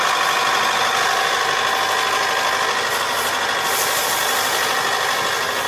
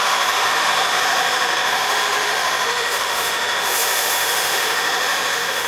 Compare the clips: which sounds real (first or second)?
first